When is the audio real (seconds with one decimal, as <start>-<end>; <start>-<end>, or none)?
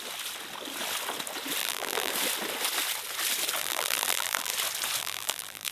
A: 0.0-1.6; 2.1-3.6; 4.5-5.0